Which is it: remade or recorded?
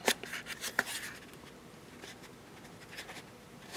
recorded